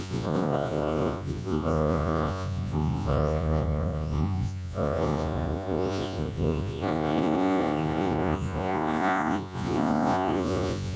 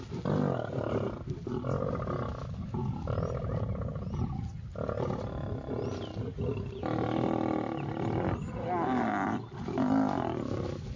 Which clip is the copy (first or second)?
first